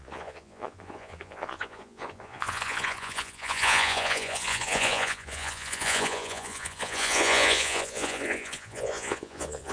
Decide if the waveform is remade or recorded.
remade